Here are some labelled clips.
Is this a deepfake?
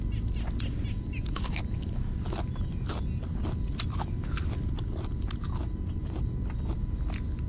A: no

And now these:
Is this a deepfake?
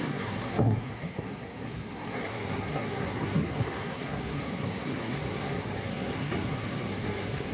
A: yes